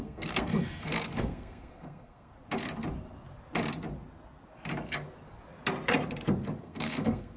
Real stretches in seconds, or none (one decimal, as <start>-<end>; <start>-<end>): 2.3-6.6